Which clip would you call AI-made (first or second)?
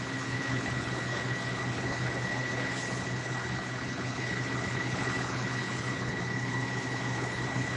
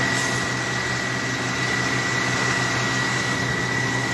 first